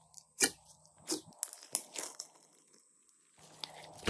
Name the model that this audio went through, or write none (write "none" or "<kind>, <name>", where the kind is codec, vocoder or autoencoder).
none